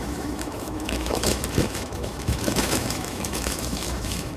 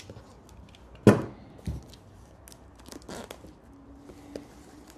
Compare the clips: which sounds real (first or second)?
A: second